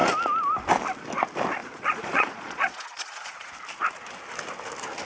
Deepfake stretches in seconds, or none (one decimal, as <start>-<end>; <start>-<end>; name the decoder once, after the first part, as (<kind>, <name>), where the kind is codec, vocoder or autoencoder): 1.6-3.5 (vocoder, Vocos)